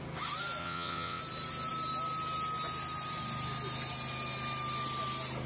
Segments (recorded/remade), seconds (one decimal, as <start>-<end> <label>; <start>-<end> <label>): 0.0-0.6 recorded; 0.6-1.2 remade; 1.2-5.5 recorded